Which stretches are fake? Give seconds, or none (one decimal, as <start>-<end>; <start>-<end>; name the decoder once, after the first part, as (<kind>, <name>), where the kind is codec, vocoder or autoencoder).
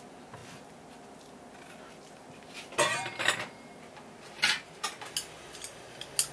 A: none